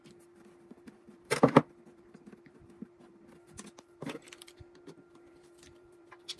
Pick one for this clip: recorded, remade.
remade